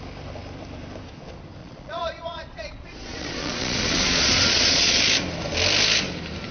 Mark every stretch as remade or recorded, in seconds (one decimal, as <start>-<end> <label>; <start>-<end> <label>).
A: 0.0-1.6 recorded; 1.6-5.0 remade; 5.0-6.5 recorded